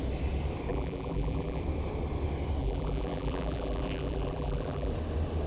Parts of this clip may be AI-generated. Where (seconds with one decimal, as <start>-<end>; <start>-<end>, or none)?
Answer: 0.7-1.6; 2.6-4.9